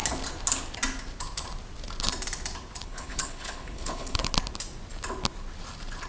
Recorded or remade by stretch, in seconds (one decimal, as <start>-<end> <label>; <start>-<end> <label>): 0.0-2.8 recorded; 2.8-4.3 remade; 4.3-6.1 recorded